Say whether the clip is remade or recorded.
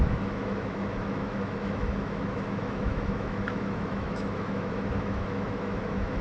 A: remade